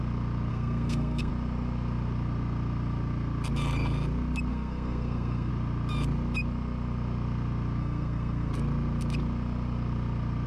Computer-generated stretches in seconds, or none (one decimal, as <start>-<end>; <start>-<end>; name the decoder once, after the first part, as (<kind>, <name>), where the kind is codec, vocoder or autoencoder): 0.5-1.3 (codec, SNAC); 4.5-5.5; 7.8-8.5